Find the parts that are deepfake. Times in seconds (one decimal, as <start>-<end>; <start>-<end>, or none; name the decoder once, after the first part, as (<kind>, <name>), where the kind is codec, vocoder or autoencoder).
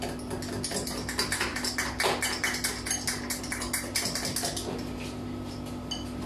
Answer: none